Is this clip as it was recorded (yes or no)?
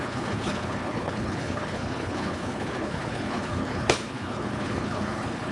no